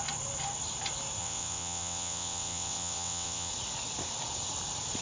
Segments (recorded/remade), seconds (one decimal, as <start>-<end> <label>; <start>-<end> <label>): 0.0-1.2 recorded; 1.2-3.5 remade; 3.5-5.0 recorded